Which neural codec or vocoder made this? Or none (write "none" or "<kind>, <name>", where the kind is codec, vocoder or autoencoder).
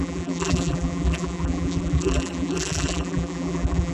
vocoder, BigVGAN v2